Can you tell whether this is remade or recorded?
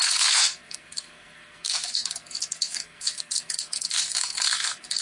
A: remade